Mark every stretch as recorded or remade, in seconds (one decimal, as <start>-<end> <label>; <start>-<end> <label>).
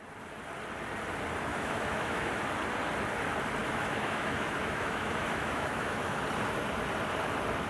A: 0.0-1.5 recorded; 1.5-2.4 remade; 2.4-3.6 recorded; 3.6-6.2 remade; 6.2-7.7 recorded